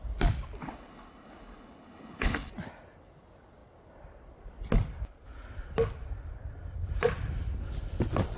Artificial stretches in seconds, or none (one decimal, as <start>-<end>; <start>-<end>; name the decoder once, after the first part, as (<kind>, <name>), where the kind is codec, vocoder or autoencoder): 0.6-2.5 (codec, HILCodec)